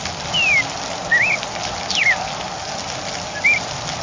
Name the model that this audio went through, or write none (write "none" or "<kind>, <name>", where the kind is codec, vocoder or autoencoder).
none